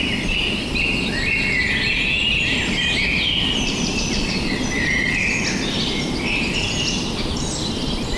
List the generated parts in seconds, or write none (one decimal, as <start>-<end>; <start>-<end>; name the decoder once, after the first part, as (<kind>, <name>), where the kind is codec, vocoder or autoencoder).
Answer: 3.1-6.6 (vocoder, BigVGAN v2)

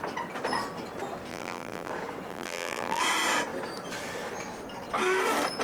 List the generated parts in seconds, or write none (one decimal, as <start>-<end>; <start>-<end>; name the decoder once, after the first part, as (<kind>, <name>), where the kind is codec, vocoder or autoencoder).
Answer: 1.3-1.9 (vocoder, BigVGAN v2); 2.3-3.0

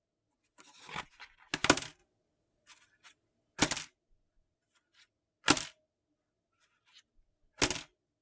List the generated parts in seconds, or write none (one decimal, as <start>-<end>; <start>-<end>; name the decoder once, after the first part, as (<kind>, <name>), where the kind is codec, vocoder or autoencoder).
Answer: none

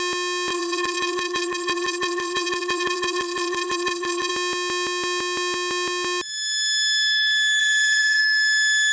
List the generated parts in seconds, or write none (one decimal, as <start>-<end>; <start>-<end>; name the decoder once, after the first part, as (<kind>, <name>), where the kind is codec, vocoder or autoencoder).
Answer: 0.5-4.3 (vocoder, BigVGAN v2); 7.6-8.2